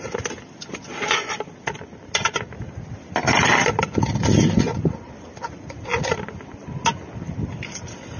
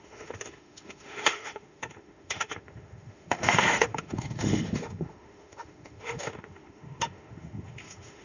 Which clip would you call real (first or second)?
first